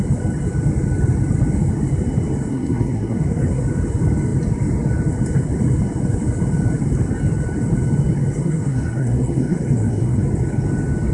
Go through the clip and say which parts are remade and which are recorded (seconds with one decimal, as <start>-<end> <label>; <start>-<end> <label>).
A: 0.0-2.5 recorded; 2.5-3.6 remade; 3.6-8.4 recorded; 8.4-10.2 remade; 10.2-11.1 recorded